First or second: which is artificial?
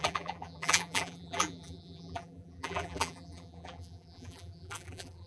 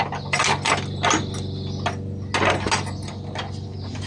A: first